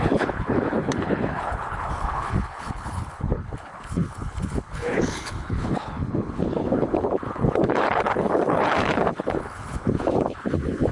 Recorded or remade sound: remade